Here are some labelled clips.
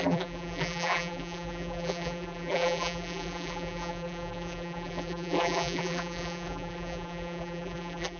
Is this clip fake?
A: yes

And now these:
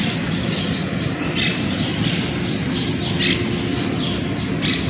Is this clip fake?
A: no